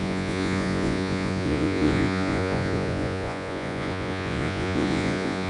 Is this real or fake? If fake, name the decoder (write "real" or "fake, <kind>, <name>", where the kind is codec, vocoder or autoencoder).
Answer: fake, vocoder, Vocos